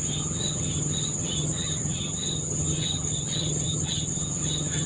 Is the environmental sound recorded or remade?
remade